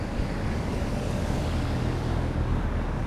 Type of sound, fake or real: fake